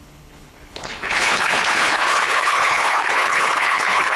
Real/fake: fake